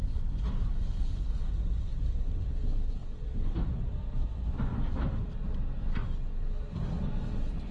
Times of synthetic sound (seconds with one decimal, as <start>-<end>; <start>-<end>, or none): none